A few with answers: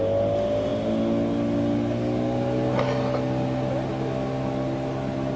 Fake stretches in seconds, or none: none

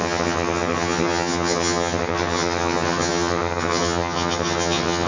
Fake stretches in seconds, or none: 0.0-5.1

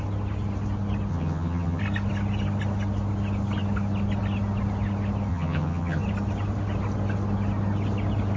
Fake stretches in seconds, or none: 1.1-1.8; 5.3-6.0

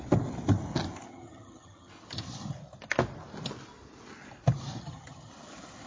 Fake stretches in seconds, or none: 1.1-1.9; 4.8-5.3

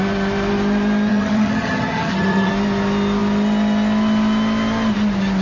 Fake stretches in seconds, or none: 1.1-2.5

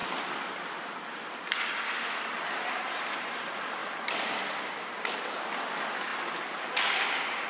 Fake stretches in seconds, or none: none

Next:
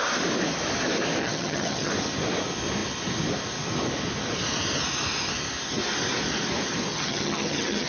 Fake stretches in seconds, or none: 1.2-1.9; 6.9-7.9

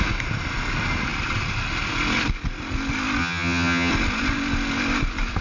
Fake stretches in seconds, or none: 3.2-3.9